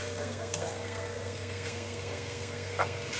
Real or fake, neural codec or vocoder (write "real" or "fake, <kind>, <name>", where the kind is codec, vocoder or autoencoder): fake, codec, SNAC